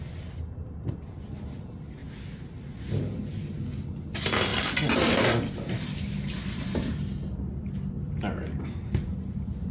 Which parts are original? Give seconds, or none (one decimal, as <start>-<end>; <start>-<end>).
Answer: 0.0-9.7